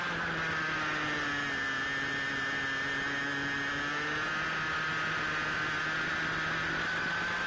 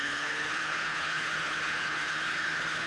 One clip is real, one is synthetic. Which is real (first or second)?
first